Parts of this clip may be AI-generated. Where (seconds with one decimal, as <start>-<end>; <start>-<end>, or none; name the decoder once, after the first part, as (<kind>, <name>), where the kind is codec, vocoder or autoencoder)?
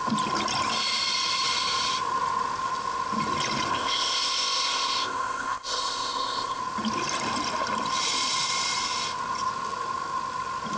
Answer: 3.7-6.6 (codec, ZipCodec)